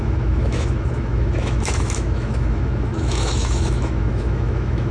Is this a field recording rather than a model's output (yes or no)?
no